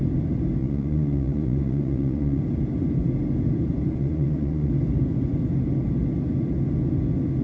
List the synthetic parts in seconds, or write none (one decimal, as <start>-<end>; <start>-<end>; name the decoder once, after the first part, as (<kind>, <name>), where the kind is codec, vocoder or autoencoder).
0.6-2.4 (vocoder, Vocos); 3.9-4.7